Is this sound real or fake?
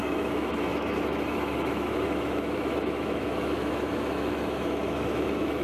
fake